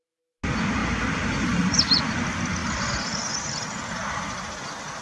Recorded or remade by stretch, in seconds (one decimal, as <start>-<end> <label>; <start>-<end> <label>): 0.0-0.8 recorded; 0.8-2.0 remade; 2.0-2.6 recorded; 2.6-3.9 remade; 3.9-5.0 recorded